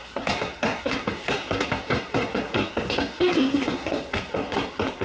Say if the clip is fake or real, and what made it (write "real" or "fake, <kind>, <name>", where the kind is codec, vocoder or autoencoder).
fake, codec, SNAC